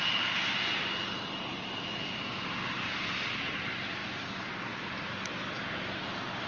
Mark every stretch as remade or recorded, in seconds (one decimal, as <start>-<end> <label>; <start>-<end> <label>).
0.0-6.5 recorded